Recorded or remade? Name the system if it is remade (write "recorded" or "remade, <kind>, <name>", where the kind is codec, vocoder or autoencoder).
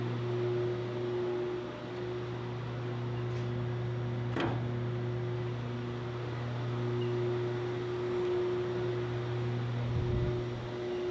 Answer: recorded